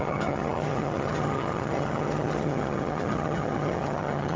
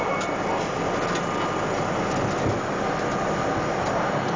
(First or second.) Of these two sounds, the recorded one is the second